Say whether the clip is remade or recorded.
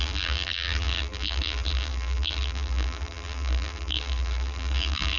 remade